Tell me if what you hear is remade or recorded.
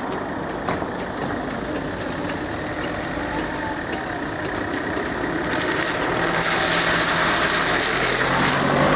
recorded